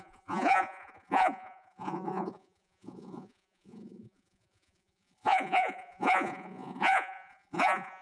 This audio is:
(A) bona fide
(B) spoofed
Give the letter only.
B